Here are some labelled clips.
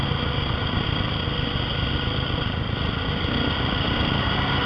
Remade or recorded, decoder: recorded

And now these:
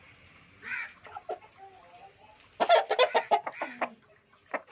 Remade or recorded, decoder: recorded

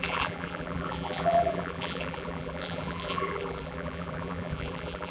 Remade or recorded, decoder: remade, vocoder, BigVGAN v2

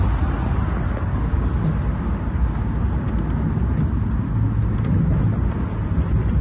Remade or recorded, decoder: recorded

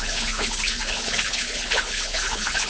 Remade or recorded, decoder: remade, codec, HILCodec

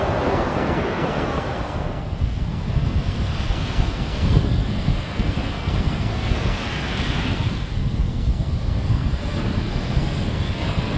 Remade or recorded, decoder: remade, codec, SNAC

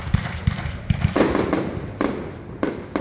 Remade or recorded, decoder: recorded